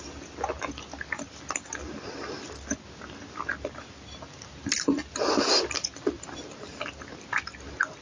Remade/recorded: recorded